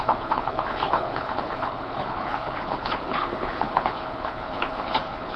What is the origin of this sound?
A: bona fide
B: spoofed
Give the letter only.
B